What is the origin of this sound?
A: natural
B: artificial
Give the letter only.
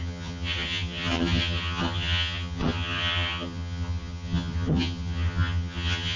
B